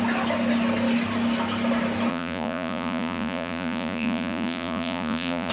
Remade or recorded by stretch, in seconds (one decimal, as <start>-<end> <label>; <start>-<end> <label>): 0.0-2.1 recorded; 2.1-5.5 remade